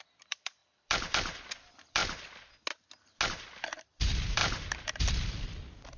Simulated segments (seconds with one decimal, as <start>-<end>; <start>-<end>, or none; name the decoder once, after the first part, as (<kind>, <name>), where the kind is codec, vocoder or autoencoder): 0.0-2.0 (vocoder, BigVGAN v2); 3.3-6.0